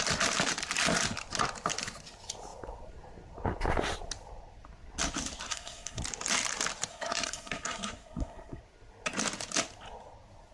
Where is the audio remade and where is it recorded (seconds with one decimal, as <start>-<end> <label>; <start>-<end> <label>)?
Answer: 0.0-5.5 recorded; 5.5-6.0 remade; 6.0-6.9 recorded; 6.9-8.6 remade; 8.6-10.5 recorded